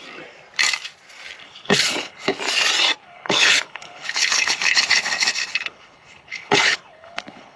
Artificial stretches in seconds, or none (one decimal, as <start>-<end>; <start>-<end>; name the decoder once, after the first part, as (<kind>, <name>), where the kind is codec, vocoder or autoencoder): 1.4-2.4 (codec, HILCodec); 3.0-7.6